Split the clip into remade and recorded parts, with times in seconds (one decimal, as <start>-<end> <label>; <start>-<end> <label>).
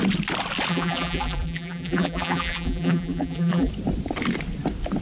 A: 0.0-0.7 recorded; 0.7-3.7 remade; 3.7-5.0 recorded